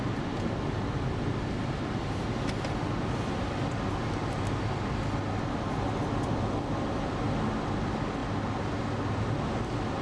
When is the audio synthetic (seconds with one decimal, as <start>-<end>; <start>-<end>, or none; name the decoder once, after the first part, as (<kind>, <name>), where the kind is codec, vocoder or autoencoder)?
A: none